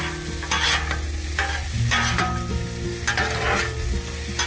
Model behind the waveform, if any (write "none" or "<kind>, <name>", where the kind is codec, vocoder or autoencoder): none